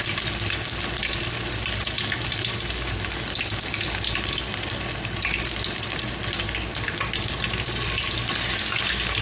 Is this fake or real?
real